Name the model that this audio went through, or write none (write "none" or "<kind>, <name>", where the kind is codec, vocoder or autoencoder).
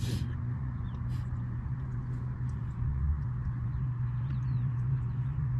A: vocoder, Vocos